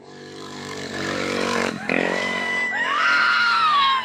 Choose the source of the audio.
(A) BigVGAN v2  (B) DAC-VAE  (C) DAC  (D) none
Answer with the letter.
C